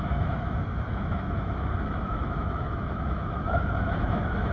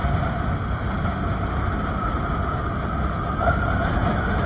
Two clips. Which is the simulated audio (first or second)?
first